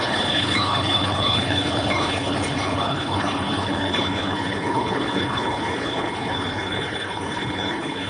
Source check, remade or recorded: remade